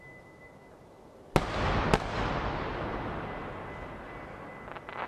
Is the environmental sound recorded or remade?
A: recorded